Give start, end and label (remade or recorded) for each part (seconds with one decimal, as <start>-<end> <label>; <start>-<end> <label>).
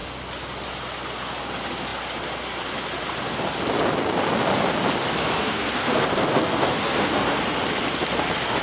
0.0-5.2 recorded; 5.2-7.4 remade; 7.4-8.6 recorded